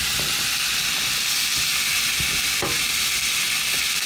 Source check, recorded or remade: recorded